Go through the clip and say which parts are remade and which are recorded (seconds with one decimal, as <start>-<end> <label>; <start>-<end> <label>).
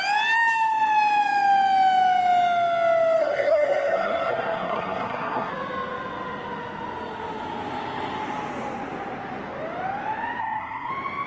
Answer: 0.0-3.2 recorded; 3.2-5.5 remade; 5.5-10.4 recorded; 10.4-10.9 remade; 10.9-11.3 recorded